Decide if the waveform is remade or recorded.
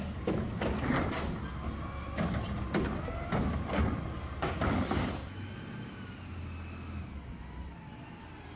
recorded